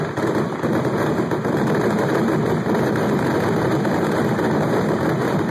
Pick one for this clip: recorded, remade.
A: remade